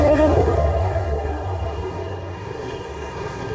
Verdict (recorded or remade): remade